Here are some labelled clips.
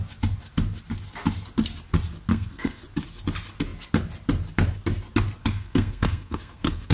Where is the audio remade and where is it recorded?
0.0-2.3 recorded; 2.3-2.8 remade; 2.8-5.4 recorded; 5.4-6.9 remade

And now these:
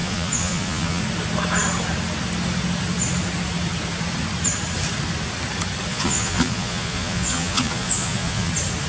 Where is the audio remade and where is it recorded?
0.0-1.0 remade; 1.0-5.9 recorded; 5.9-8.5 remade; 8.5-8.9 recorded

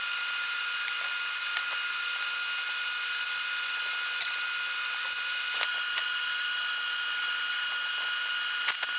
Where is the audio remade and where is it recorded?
0.0-9.0 recorded

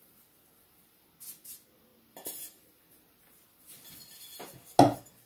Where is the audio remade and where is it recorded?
0.0-5.3 recorded

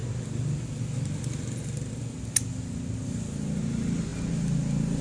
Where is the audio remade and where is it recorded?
0.0-5.0 recorded

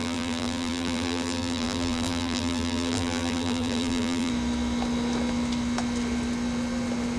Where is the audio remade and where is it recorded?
0.0-4.3 remade; 4.3-7.2 recorded